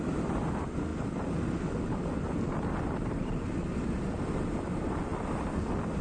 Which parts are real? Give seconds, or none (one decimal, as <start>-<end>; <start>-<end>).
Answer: none